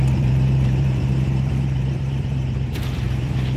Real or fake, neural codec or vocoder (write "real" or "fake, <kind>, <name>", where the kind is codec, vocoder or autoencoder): fake, vocoder, BigVGAN v2